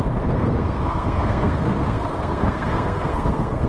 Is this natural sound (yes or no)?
no